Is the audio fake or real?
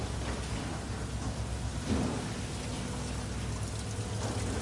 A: real